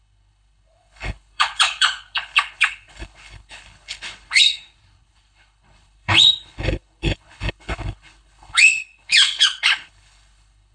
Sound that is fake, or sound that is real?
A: fake